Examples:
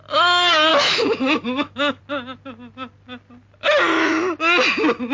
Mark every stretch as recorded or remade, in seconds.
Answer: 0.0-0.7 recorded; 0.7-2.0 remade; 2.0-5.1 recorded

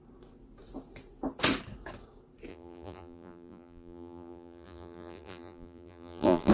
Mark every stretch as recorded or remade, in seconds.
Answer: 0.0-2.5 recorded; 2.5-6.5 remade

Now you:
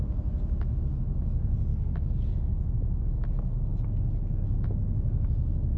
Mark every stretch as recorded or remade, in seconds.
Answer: 0.0-5.8 recorded